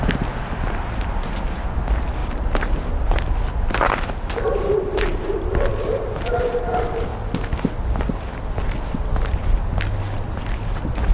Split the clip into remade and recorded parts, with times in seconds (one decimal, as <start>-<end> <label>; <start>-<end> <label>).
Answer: 0.0-11.1 recorded